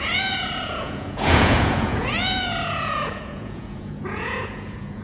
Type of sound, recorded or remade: remade